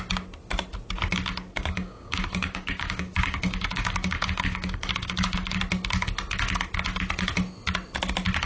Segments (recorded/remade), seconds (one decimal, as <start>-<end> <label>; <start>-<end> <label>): 0.0-1.3 recorded; 1.3-5.6 remade; 5.6-8.5 recorded